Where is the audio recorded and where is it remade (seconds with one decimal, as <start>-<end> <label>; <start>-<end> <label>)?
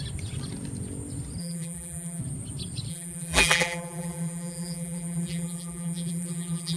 0.0-1.4 recorded; 1.4-2.2 remade; 2.2-2.9 recorded; 2.9-6.8 remade